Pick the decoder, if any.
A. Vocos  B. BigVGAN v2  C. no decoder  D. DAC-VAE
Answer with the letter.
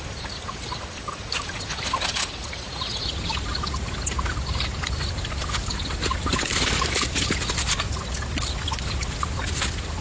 C